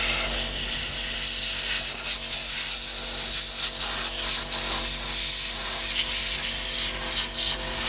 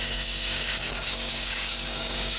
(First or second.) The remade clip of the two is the second